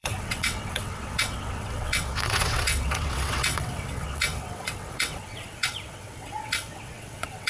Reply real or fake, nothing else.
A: fake